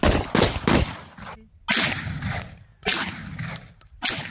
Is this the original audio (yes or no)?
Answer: yes